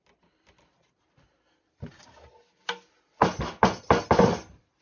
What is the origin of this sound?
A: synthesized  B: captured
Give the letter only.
B